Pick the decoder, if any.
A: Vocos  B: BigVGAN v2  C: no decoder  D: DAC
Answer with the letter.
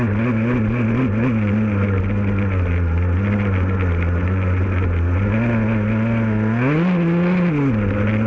C